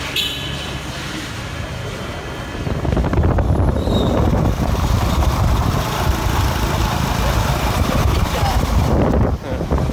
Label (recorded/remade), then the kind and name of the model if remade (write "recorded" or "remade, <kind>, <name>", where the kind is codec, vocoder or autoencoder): remade, vocoder, BigVGAN v2